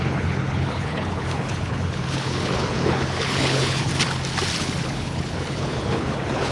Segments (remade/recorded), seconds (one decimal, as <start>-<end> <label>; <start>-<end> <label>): 0.0-3.9 remade; 3.9-4.6 recorded; 4.6-6.5 remade